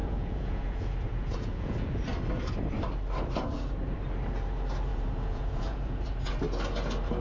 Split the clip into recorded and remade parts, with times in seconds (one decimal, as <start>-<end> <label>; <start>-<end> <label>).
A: 0.0-2.0 remade; 2.0-4.9 recorded; 4.9-6.3 remade; 6.3-7.2 recorded